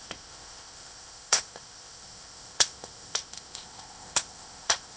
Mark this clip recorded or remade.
remade